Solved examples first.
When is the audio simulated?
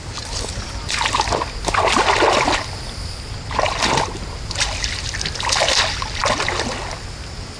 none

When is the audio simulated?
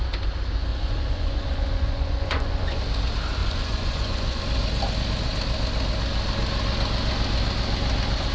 0.7-2.8 (vocoder, Vocos); 3.4-4.4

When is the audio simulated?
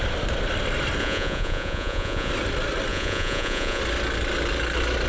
1.0-2.3 (vocoder, Vocos); 2.9-3.8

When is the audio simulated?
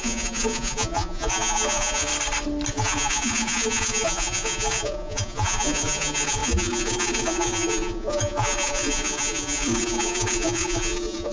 0.0-2.1 (vocoder, Vocos); 2.7-11.3